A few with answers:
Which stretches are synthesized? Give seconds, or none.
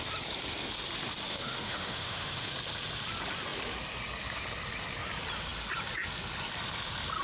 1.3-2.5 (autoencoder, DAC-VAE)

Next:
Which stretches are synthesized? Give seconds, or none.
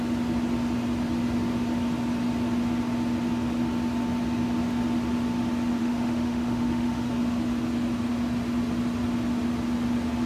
5.8-7.1 (autoencoder, DAC-VAE)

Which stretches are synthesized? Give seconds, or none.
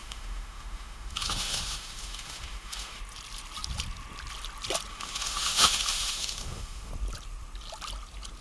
0.0-3.0 (autoencoder, DAC-VAE); 4.9-6.9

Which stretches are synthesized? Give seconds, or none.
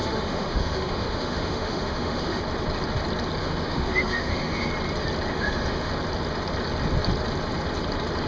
0.0-2.4 (autoencoder, DAC-VAE); 3.4-4.7; 5.3-5.9